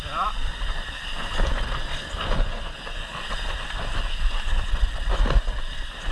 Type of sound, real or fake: real